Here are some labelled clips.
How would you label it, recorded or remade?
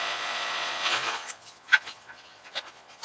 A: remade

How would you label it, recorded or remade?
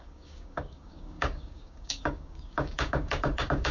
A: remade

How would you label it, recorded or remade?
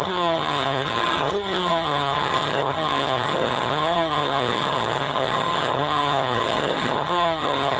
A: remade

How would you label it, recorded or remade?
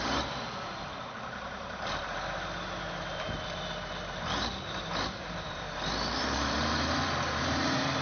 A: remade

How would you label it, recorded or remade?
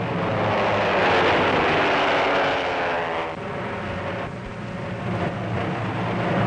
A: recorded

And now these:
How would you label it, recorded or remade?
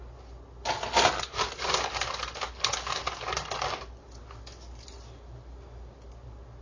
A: recorded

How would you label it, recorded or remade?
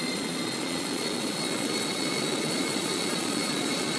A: remade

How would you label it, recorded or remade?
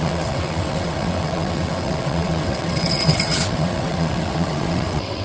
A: remade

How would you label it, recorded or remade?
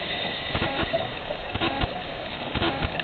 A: remade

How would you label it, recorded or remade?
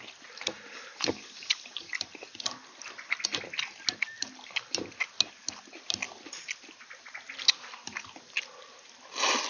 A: recorded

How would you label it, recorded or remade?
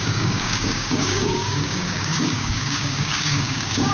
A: remade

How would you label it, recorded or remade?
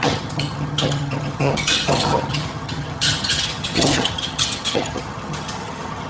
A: remade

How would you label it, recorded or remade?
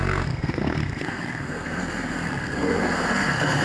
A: remade